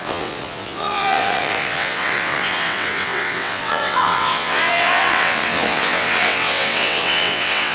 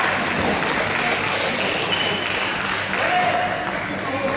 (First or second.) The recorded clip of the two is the second